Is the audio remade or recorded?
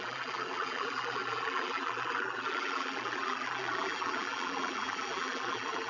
remade